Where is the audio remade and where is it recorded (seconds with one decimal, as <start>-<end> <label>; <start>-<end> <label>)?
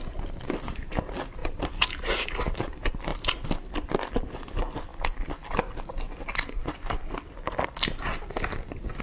0.0-4.9 remade; 4.9-9.0 recorded